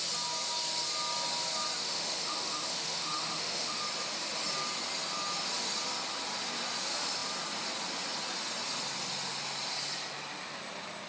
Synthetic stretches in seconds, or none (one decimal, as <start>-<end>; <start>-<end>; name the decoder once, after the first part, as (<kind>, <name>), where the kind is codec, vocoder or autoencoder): 1.8-3.8 (autoencoder, DAC-VAE)